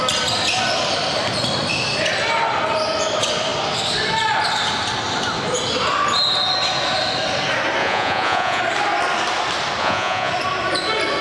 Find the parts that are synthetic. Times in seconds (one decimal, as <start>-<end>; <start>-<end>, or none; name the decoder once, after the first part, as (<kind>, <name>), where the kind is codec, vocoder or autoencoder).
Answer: 7.8-8.6 (vocoder, Vocos); 9.8-10.3